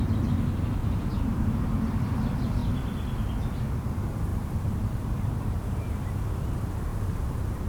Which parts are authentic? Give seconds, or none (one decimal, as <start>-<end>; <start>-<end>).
0.0-0.8; 1.6-4.3; 6.0-6.9